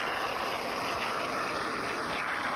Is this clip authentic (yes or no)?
yes